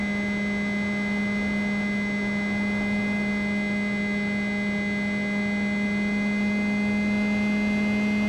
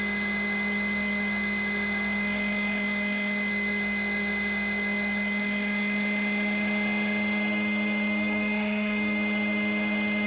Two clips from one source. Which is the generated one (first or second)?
second